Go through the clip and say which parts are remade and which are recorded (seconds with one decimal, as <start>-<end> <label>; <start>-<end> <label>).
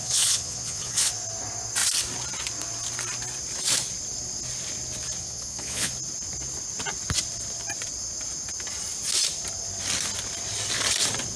0.0-1.1 remade; 1.1-5.2 recorded; 5.2-5.9 remade; 5.9-11.4 recorded